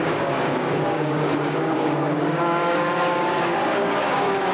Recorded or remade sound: remade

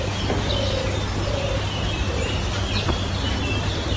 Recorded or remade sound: recorded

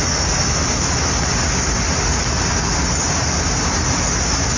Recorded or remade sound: recorded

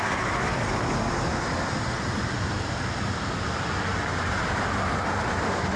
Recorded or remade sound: recorded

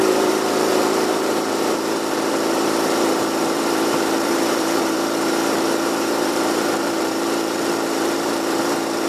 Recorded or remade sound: remade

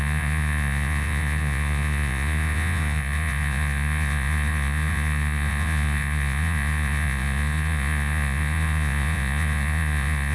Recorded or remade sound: remade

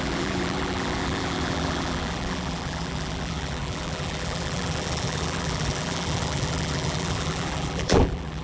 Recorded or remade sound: remade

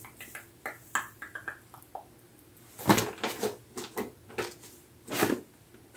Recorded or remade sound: recorded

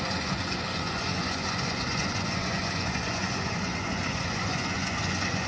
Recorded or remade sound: remade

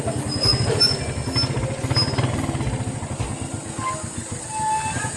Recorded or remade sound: recorded